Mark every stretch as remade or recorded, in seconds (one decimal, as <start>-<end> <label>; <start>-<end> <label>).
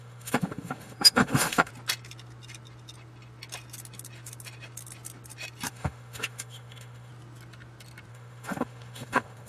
0.0-1.7 remade; 1.7-5.7 recorded; 5.7-7.1 remade; 7.1-8.1 recorded; 8.1-9.5 remade